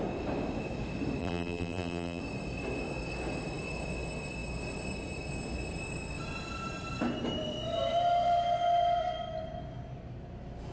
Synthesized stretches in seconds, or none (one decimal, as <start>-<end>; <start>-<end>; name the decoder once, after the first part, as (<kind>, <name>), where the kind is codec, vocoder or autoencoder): 1.2-2.2 (vocoder, BigVGAN v2)